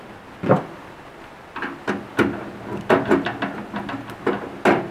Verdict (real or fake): real